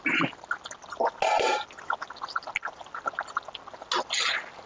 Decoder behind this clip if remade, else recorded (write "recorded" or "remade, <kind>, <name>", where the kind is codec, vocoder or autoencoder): recorded